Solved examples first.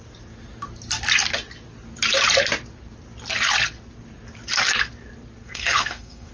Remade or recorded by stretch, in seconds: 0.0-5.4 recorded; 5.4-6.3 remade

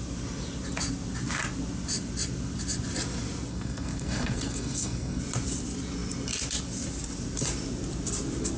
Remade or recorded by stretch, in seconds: 0.0-3.5 recorded; 3.5-5.2 remade; 5.2-8.6 recorded

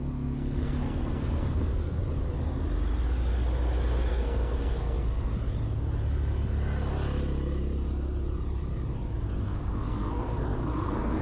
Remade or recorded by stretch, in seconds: 0.0-2.0 remade; 2.0-4.1 recorded; 4.1-5.3 remade; 5.3-9.4 recorded; 9.4-11.2 remade

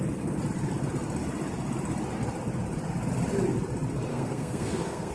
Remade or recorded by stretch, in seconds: 0.0-4.1 recorded; 4.1-5.1 remade

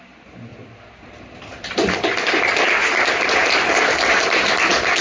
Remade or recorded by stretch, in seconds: 0.0-5.0 recorded

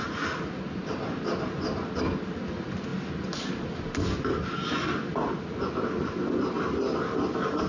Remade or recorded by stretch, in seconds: 0.0-7.7 recorded

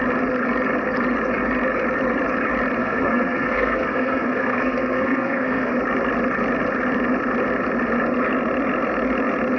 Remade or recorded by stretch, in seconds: 0.0-2.8 recorded; 2.8-5.7 remade; 5.7-9.6 recorded

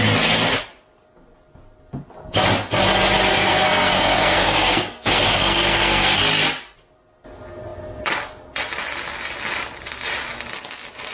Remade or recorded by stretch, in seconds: 0.0-3.3 recorded; 3.3-6.2 remade; 6.2-11.1 recorded